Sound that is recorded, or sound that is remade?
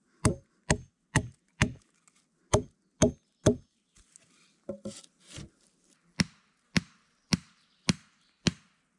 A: recorded